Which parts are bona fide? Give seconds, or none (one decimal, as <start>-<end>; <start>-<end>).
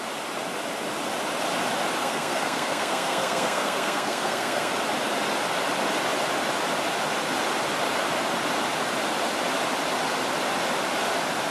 0.0-2.0; 4.7-11.5